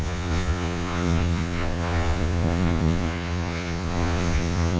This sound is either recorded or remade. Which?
remade